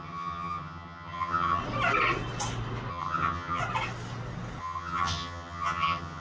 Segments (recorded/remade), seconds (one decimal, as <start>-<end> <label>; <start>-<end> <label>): 0.0-1.6 remade; 1.6-2.9 recorded; 2.9-3.6 remade; 3.6-4.6 recorded; 4.6-6.2 remade